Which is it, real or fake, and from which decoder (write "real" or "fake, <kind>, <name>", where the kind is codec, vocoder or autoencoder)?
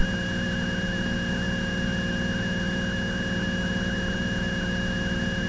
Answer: real